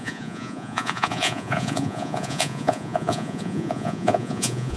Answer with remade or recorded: remade